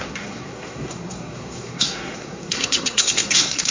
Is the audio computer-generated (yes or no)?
yes